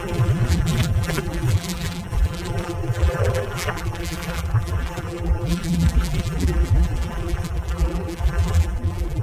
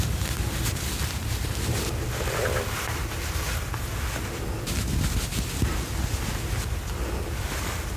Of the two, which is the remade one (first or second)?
first